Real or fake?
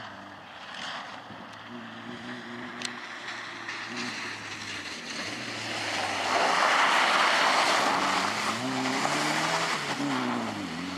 real